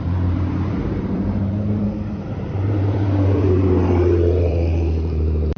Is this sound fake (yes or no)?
yes